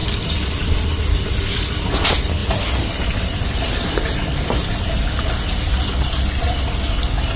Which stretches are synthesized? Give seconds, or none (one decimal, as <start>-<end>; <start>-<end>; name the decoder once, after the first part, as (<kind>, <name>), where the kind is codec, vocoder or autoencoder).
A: 0.0-1.7 (vocoder, BigVGAN v2); 2.4-6.1